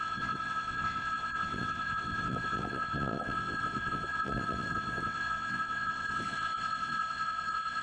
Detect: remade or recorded remade